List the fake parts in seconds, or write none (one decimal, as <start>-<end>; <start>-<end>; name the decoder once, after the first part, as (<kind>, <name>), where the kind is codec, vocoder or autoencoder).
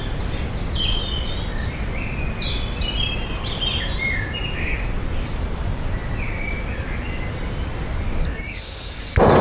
none